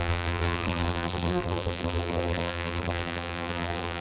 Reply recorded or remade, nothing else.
remade